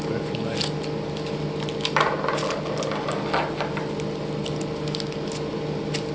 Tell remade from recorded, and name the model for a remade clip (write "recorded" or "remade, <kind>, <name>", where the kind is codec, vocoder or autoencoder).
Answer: recorded